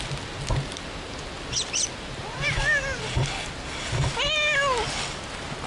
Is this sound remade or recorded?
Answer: recorded